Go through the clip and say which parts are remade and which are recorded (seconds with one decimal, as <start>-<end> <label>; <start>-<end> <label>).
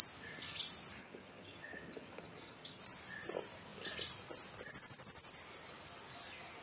0.0-1.0 recorded; 1.0-2.8 remade; 2.8-6.6 recorded